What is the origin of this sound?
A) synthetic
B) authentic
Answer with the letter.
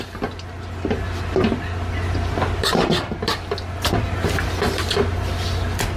B